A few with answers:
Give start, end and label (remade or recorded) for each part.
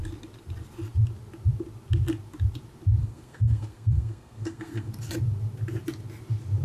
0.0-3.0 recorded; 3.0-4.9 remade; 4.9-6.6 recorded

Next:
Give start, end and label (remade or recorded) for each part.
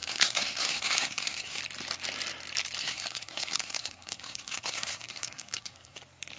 0.0-1.6 remade; 1.6-2.8 recorded; 2.8-6.0 remade; 6.0-6.4 recorded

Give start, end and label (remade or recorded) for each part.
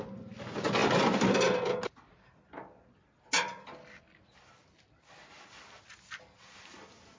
0.0-7.2 recorded